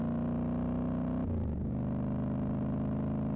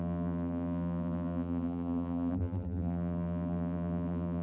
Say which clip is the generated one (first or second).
second